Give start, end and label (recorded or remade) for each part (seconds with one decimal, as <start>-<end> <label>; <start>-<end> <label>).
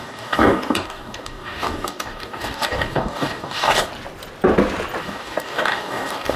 0.0-3.9 remade; 3.9-5.0 recorded; 5.0-6.4 remade